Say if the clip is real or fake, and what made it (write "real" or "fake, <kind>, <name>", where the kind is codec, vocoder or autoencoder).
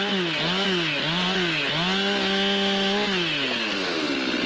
real